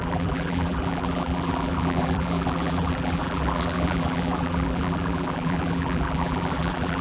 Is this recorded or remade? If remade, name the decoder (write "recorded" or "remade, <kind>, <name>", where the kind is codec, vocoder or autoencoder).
remade, vocoder, BigVGAN v2